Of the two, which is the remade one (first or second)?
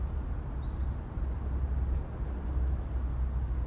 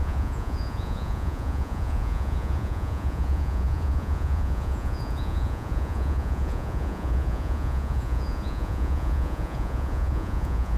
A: second